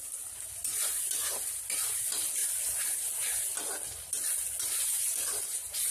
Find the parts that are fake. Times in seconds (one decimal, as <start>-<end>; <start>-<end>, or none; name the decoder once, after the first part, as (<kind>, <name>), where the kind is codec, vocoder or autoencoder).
none